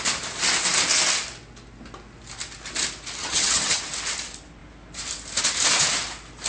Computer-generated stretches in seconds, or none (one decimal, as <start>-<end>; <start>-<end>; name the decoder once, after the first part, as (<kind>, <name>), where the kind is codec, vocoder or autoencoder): 3.2-3.8 (vocoder, HiFi-GAN)